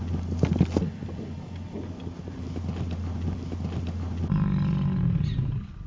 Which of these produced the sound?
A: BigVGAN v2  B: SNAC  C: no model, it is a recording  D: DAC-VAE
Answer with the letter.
C